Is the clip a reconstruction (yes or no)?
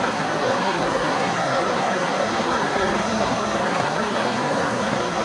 yes